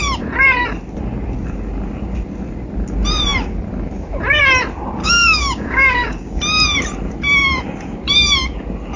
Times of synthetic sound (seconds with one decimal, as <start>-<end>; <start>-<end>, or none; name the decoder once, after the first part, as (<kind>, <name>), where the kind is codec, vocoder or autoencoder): 5.0-6.4 (codec, DAC)